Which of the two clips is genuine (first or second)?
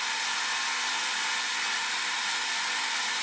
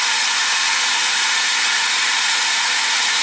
first